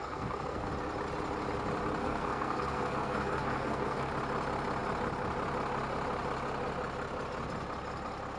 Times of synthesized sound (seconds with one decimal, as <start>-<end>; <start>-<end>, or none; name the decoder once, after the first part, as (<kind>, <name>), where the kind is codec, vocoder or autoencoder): 0.0-0.7 (codec, SNAC); 2.0-4.1